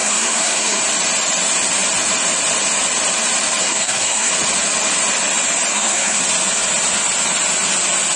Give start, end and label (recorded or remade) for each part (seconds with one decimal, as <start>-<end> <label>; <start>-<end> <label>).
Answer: 0.0-0.8 remade; 0.8-3.6 recorded; 3.6-4.3 remade; 4.3-5.7 recorded; 5.7-6.2 remade; 6.2-8.2 recorded

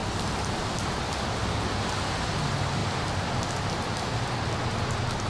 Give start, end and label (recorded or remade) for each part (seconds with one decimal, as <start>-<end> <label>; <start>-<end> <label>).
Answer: 0.0-5.3 recorded

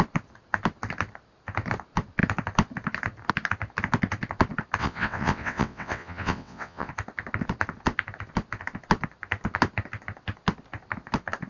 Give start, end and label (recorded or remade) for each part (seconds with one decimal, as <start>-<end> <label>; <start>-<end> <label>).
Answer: 0.0-4.8 recorded; 4.8-6.9 remade; 6.9-11.5 recorded

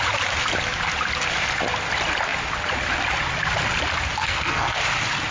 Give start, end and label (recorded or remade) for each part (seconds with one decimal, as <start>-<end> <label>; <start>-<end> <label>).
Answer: 0.0-4.2 recorded; 4.2-4.8 remade; 4.8-5.3 recorded